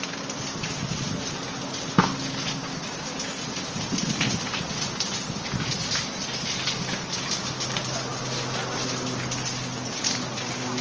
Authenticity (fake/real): real